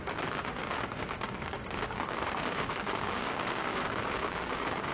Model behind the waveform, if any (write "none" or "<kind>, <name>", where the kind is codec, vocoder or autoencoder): codec, DAC